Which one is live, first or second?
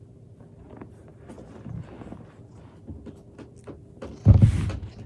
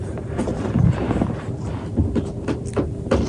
first